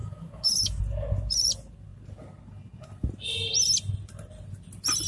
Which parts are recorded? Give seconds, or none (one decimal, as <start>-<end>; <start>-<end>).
0.8-5.1